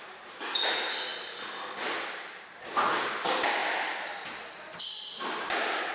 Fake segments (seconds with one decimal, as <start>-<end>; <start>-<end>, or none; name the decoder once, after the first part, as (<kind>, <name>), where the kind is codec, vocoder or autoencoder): none